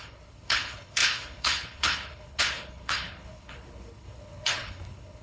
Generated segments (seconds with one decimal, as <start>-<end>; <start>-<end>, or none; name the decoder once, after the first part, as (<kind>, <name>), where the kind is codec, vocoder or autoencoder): 0.0-5.2 (codec, HILCodec)